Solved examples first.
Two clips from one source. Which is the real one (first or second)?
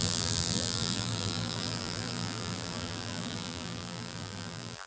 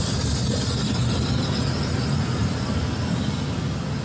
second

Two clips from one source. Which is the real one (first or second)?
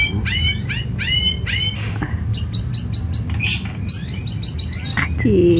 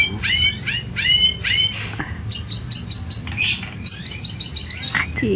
first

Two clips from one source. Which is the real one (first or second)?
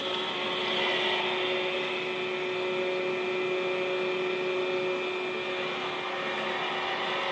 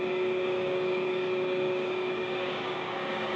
first